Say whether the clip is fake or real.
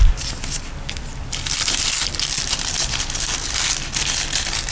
real